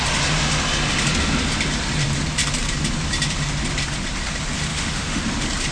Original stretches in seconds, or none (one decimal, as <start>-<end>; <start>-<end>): 0.0-4.7; 5.2-5.7